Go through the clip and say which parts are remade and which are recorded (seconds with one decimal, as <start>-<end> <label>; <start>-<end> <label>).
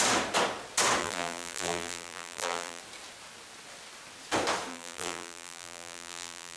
0.0-1.0 recorded; 1.0-2.8 remade; 2.8-4.7 recorded; 4.7-6.6 remade